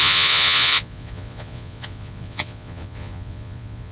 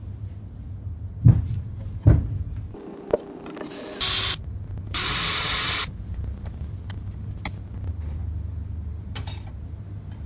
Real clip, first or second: second